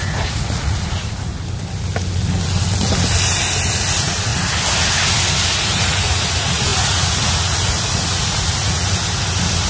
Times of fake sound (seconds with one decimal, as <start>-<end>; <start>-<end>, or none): 0.0-1.3; 3.7-4.3; 5.4-8.9